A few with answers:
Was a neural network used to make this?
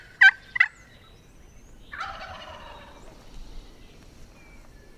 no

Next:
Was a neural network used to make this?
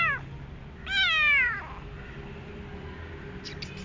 no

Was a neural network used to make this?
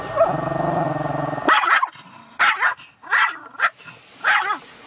no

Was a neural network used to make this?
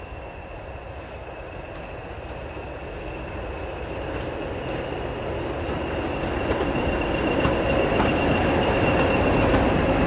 no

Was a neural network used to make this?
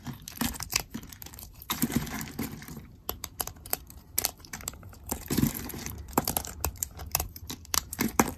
yes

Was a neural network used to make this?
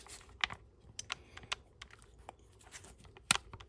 no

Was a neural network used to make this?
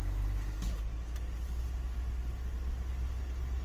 no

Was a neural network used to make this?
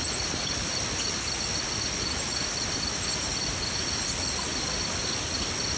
no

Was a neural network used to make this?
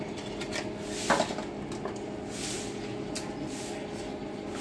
no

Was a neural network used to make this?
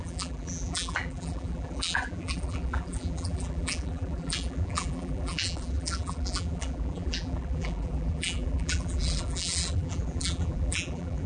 yes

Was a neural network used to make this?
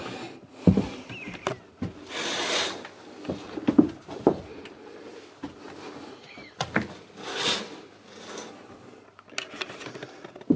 no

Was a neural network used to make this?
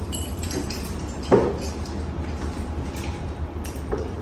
yes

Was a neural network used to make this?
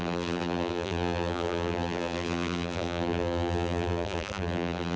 yes